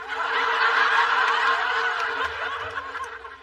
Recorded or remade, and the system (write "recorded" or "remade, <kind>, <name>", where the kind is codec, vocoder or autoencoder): recorded